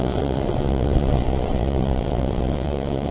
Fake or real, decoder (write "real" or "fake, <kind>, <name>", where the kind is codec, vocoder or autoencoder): fake, vocoder, WaveNeXt